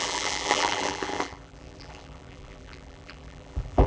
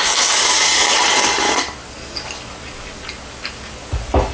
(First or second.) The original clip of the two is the second